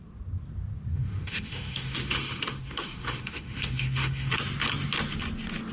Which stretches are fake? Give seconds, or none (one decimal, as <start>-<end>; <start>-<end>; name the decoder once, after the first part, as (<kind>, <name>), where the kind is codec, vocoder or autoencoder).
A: 0.9-4.3 (autoencoder, DAC-VAE)